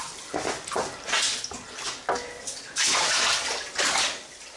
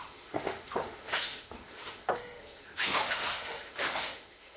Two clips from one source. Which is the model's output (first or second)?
second